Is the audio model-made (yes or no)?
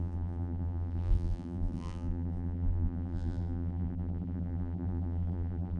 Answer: yes